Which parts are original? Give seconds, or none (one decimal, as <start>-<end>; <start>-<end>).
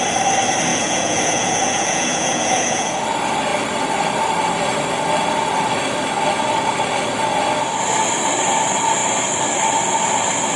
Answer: 0.0-0.7; 2.9-10.6